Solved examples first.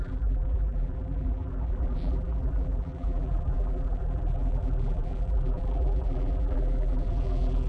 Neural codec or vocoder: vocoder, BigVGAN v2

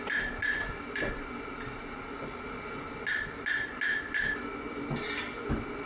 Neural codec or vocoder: none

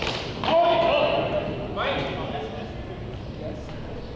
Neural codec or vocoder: none